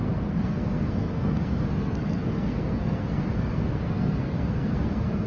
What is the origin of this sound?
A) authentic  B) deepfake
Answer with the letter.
B